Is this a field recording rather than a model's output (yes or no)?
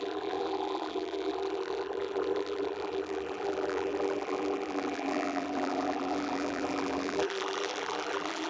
no